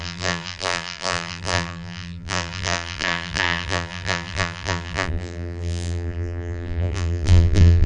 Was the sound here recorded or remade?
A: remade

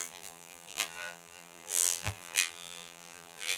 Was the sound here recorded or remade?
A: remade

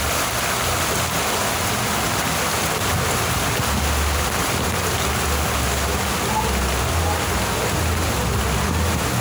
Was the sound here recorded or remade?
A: recorded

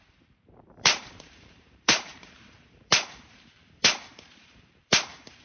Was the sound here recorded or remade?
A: remade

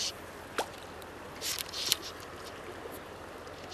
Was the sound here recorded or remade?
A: recorded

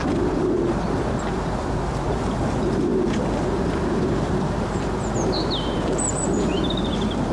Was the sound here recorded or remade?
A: remade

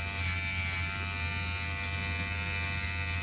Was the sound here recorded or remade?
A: recorded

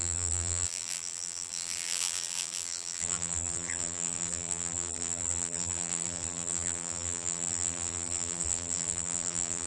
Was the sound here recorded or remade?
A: remade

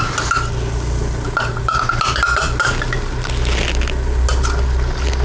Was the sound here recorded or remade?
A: recorded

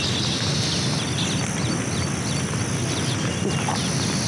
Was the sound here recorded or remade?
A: recorded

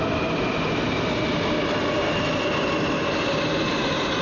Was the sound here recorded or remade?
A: recorded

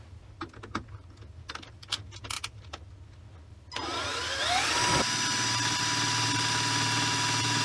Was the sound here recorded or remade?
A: remade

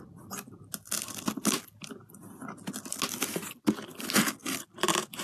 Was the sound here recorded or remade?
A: recorded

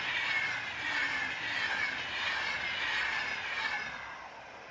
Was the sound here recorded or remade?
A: remade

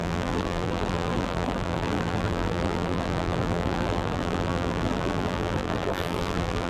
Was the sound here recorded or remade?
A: remade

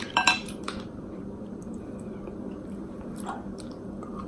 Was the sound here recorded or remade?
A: remade